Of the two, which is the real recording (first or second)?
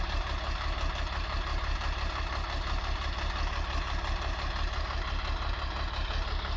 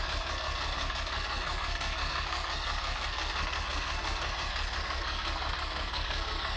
first